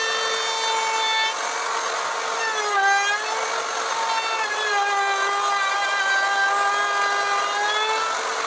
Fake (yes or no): no